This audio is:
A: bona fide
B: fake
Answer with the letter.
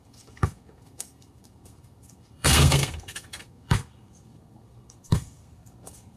B